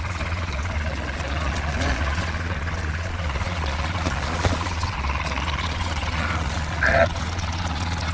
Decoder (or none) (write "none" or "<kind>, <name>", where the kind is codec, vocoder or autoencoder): vocoder, Vocos